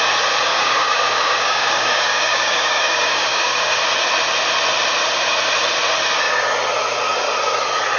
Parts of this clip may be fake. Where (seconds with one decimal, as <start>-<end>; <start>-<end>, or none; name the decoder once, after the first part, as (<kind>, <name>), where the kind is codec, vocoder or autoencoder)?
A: 0.5-3.8 (codec, DAC)